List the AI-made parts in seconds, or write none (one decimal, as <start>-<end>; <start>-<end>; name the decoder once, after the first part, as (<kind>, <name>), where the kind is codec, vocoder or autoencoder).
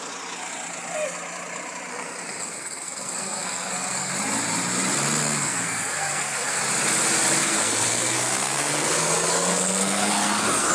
1.9-4.1 (codec, SNAC); 5.2-6.6; 7.4-10.7